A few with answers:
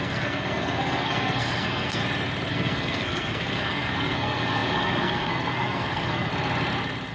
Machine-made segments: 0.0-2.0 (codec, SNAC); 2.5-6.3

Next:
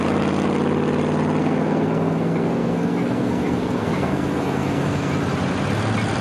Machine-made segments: 1.4-5.1 (codec, SNAC)

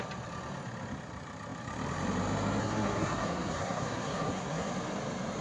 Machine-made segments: 2.6-4.7 (codec, SNAC)

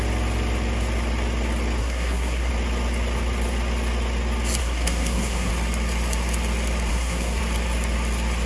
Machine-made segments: 1.8-2.5 (codec, SNAC); 4.6-5.5; 6.9-7.4